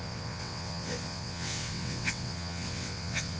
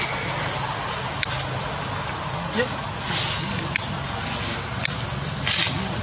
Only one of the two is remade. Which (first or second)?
first